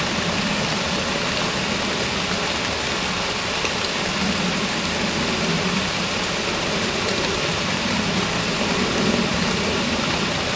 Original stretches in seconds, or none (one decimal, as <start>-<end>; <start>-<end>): 1.0-6.0